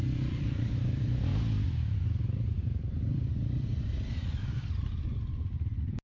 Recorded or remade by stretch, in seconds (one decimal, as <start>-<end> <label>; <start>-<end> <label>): 0.0-6.0 remade